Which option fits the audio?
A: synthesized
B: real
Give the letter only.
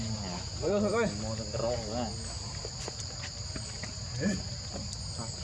B